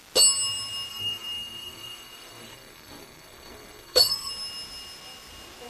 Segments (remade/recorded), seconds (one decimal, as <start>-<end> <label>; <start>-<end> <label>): 0.0-0.9 recorded; 0.9-4.3 remade; 4.3-5.7 recorded